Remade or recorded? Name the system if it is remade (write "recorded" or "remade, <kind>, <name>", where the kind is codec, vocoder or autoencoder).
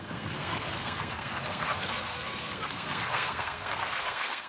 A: remade, codec, SNAC